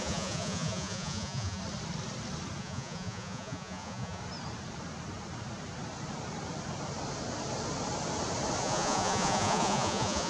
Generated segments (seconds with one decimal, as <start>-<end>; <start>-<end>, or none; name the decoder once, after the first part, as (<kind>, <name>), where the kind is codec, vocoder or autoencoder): 0.0-1.6 (vocoder, Vocos); 2.6-4.2; 8.6-10.3